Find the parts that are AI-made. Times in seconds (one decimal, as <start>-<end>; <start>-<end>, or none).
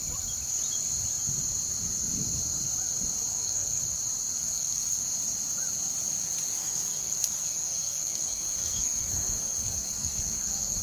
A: 3.3-3.8; 4.4-5.0; 6.6-10.8